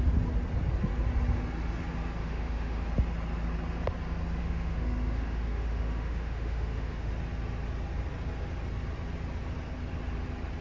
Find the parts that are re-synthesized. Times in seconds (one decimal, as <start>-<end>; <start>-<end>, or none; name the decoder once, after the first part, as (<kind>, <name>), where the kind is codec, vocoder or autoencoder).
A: 2.2-2.8 (autoencoder, DAC-VAE); 4.4-7.1